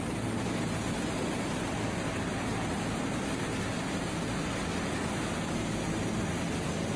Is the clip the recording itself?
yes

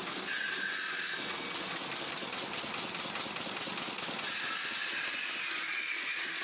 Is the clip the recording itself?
yes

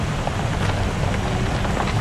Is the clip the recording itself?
yes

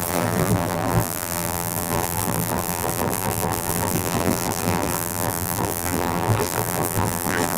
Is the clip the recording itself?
no